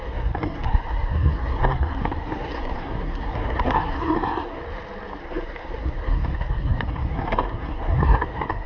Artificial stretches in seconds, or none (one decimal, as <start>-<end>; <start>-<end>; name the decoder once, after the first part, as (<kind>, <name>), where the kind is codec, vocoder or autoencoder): 0.0-4.6 (codec, SNAC); 5.2-8.7